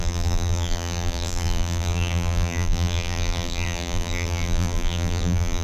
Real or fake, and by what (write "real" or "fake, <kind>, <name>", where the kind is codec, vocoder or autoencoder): fake, vocoder, BigVGAN v2